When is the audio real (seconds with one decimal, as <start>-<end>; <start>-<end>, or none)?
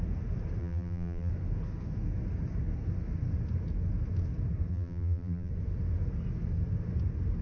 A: 0.0-0.6; 1.3-4.7; 5.5-7.4